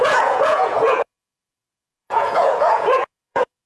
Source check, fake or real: fake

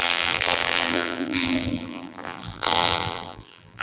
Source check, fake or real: fake